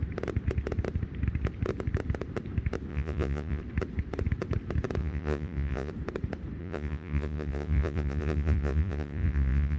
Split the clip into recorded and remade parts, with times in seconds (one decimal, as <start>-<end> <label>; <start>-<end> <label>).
0.0-2.9 recorded; 2.9-3.6 remade; 3.6-5.0 recorded; 5.0-5.9 remade; 5.9-6.6 recorded; 6.6-9.8 remade